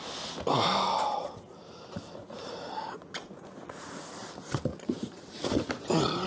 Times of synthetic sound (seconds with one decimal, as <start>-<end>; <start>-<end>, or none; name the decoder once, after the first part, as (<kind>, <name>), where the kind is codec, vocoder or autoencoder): 2.4-4.0 (vocoder, Vocos); 4.7-5.5